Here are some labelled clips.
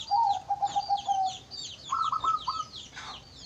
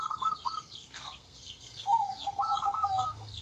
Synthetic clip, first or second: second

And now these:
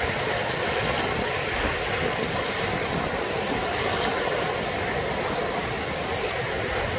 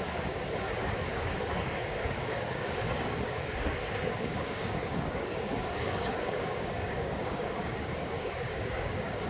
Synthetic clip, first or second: second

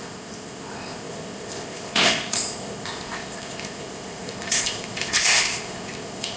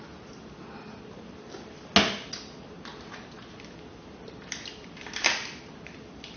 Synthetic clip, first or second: first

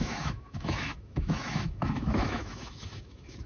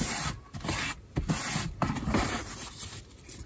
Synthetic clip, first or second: first